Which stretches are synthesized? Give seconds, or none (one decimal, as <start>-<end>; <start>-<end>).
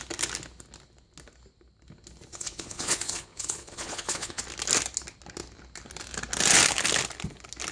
2.3-4.4